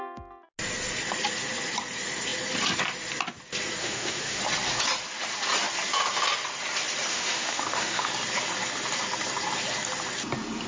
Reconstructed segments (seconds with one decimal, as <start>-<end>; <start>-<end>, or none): 3.8-4.4; 7.1-8.1